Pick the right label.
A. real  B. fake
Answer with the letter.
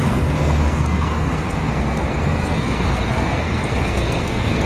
B